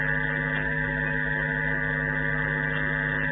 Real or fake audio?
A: real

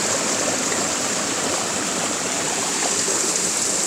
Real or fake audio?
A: real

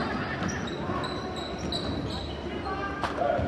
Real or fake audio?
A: real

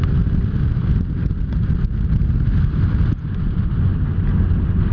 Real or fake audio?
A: real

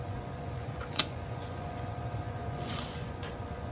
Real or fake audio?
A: fake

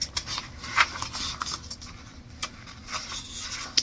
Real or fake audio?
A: real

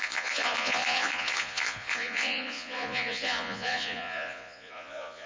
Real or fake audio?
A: fake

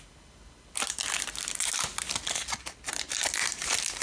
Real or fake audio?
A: real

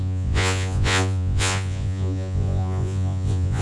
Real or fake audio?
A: fake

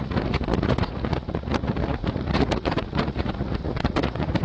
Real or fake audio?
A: fake